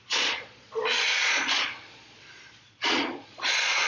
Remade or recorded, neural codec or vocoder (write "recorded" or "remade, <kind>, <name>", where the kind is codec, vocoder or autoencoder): remade, vocoder, Vocos